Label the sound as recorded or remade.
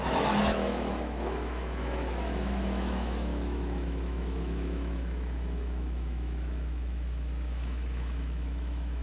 remade